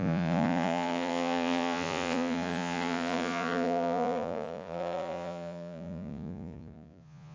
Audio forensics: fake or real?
fake